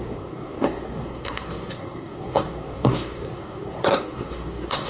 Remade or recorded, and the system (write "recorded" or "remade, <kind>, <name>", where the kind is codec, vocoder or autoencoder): remade, codec, SNAC